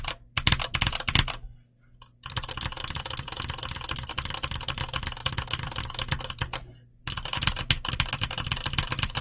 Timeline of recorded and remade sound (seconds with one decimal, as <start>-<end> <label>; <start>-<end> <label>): 0.0-9.2 recorded